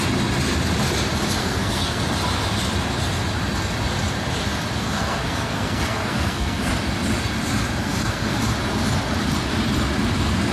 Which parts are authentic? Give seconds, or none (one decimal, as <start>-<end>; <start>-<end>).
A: 0.0-1.4; 2.0-4.8; 6.7-7.8; 8.4-10.5